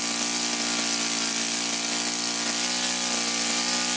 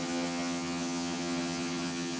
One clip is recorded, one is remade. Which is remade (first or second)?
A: second